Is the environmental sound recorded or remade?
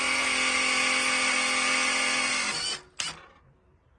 recorded